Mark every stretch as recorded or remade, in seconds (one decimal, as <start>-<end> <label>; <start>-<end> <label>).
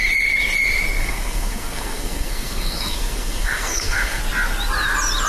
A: 0.0-1.0 recorded; 1.0-4.2 remade; 4.2-5.3 recorded